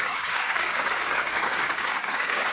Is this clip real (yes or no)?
no